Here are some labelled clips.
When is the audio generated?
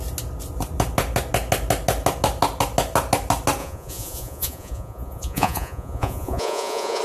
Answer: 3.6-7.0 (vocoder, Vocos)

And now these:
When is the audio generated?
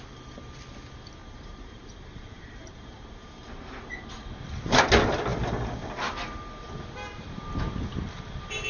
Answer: 1.2-3.8 (vocoder, BigVGAN v2)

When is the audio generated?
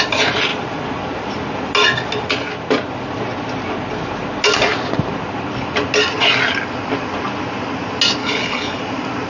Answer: 8.2-8.8 (codec, HILCodec)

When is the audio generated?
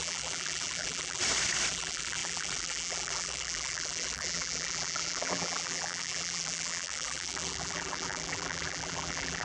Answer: 0.0-1.2 (vocoder, BigVGAN v2); 1.7-9.4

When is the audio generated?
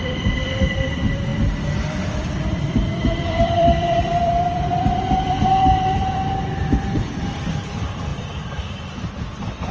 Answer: 0.0-9.7 (vocoder, BigVGAN v2)